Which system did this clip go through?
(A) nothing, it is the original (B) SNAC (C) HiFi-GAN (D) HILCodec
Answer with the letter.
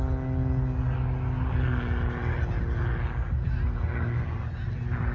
A